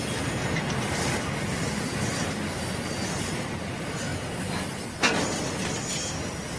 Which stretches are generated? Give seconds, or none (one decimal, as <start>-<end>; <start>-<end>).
none